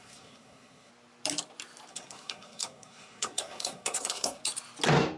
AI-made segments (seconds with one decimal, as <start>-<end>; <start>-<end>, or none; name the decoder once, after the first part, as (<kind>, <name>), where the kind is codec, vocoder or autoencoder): 0.0-0.9 (codec, SNAC); 1.9-4.4